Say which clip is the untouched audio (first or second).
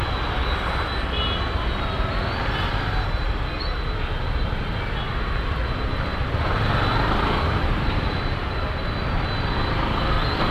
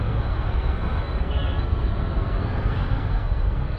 first